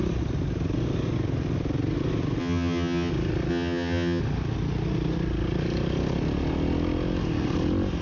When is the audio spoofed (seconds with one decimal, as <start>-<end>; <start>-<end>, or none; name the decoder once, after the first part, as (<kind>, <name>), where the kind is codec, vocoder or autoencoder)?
2.4-3.1 (vocoder, HiFi-GAN); 3.5-4.2